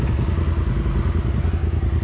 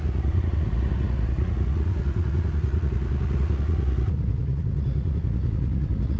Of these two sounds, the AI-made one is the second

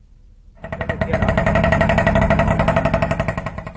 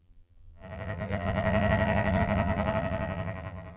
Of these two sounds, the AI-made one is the second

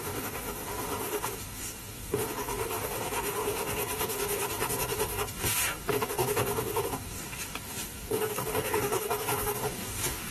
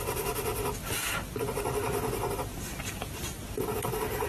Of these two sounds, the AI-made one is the first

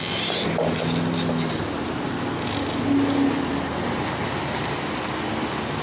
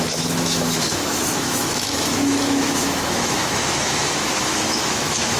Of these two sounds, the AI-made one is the second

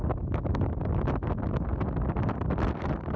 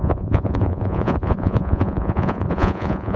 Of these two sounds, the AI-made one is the second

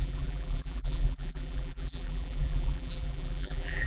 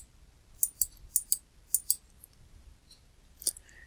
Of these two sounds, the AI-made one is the first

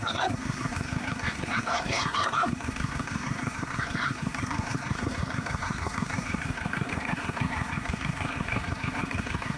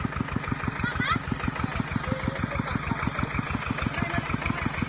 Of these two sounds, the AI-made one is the first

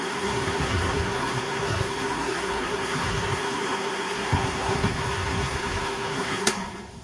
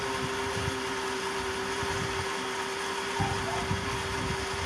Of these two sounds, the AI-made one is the first